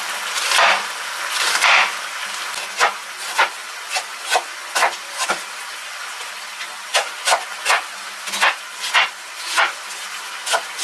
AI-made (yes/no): no